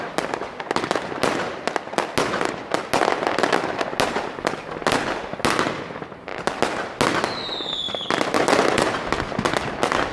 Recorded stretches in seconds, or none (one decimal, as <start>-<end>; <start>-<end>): 0.0-10.1